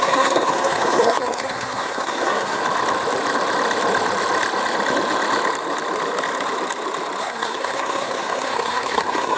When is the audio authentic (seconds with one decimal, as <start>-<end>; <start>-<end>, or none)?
2.6-7.2